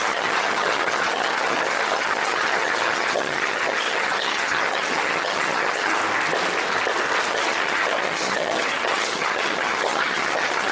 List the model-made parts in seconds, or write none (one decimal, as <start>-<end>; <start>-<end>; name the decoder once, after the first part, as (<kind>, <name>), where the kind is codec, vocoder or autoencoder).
0.0-6.0 (vocoder, HiFi-GAN); 7.3-10.7